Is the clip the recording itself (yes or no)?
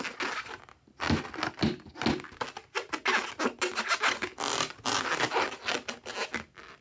yes